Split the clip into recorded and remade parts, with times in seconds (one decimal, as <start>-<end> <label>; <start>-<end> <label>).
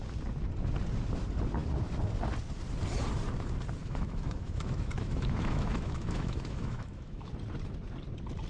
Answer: 0.0-3.8 recorded; 3.8-7.3 remade; 7.3-8.5 recorded